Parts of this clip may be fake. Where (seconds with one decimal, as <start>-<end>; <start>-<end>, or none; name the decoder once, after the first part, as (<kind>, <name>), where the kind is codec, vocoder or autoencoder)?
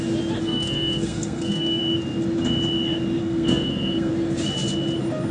0.4-1.8 (codec, SNAC); 3.2-4.1